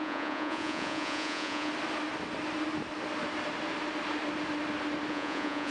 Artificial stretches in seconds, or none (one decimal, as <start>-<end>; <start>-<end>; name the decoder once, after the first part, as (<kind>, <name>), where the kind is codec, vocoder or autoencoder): 0.0-1.7 (vocoder, Vocos); 5.1-5.7